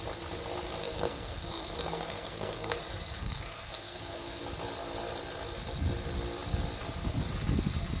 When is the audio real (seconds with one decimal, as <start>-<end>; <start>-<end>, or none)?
0.0-0.8; 2.8-3.2; 4.4-8.0